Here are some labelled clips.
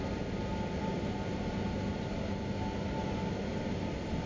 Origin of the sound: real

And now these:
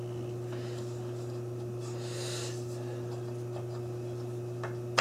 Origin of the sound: real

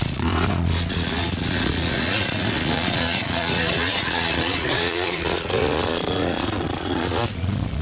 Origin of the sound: fake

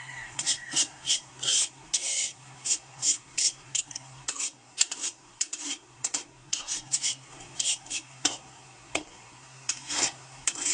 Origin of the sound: fake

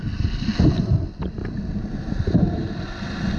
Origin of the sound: real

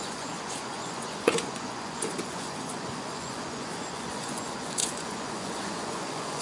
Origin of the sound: fake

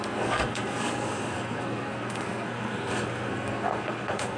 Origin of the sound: fake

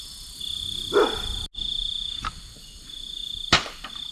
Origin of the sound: real